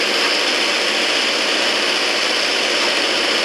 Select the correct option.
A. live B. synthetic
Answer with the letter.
B